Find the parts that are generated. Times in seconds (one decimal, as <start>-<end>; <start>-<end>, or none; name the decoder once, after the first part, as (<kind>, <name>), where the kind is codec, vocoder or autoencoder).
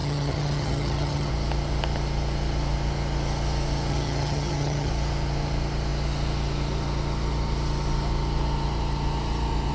0.0-1.3 (vocoder, HiFi-GAN); 3.9-4.9